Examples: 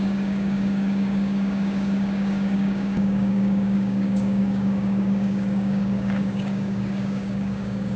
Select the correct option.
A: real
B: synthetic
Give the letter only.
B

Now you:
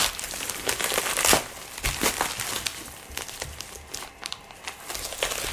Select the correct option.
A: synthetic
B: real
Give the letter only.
B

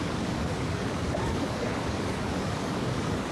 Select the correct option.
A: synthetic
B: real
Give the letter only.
A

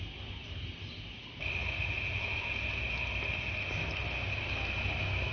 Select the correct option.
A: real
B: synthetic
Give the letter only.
A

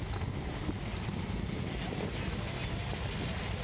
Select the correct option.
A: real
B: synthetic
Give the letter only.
A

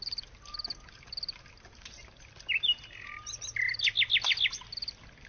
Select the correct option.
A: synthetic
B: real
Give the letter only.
B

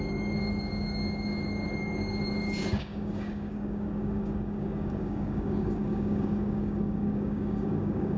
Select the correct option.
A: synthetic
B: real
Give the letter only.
A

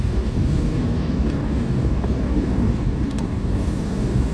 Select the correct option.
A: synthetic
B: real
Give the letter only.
A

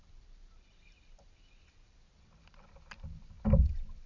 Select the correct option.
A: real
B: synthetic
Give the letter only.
A